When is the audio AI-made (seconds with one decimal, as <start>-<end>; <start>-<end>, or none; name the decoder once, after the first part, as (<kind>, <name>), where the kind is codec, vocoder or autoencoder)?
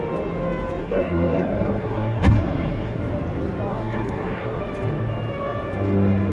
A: 0.8-3.0 (codec, SNAC); 3.7-4.6